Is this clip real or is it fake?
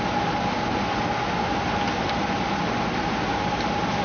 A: real